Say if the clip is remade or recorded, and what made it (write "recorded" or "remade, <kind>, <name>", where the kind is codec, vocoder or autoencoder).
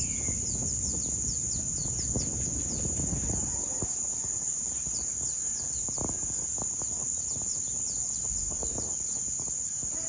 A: recorded